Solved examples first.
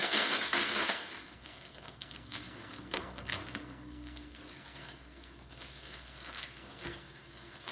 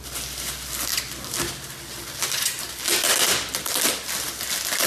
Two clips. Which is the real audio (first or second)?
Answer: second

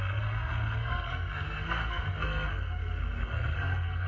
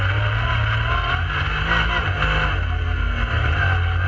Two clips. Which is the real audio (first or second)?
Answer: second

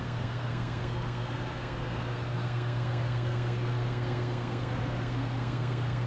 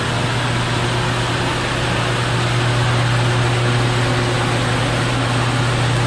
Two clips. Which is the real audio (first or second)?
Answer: second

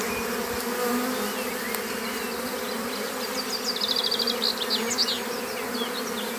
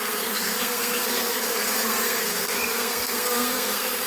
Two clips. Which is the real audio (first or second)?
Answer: first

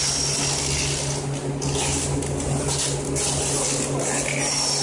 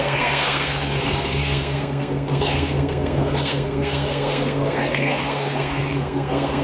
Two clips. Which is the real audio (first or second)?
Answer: first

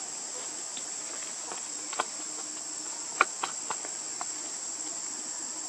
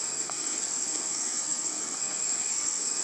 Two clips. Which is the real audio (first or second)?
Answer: first